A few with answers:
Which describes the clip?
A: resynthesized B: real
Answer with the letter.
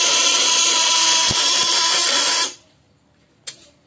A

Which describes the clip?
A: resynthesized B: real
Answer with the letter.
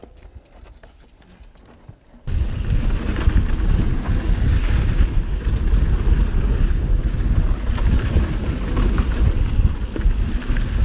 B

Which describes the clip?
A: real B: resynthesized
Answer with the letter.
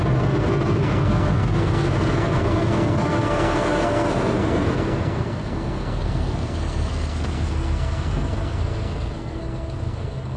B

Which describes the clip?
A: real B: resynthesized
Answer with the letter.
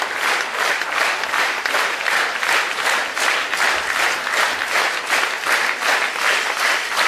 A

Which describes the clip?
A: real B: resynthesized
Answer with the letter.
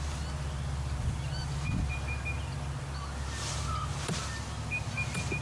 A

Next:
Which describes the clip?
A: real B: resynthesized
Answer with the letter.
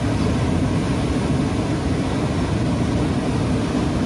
A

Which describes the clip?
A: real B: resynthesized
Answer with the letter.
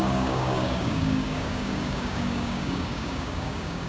B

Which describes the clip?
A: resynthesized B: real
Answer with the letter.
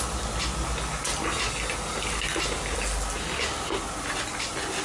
B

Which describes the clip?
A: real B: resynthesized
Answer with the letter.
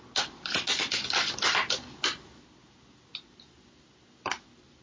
A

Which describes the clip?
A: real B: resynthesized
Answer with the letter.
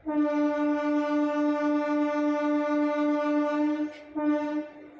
A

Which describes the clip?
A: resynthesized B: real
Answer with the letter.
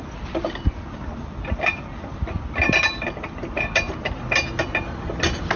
B